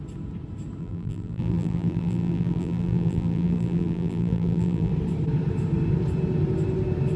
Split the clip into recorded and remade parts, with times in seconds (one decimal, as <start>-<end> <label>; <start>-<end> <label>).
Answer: 0.0-0.8 recorded; 0.8-4.9 remade; 4.9-7.2 recorded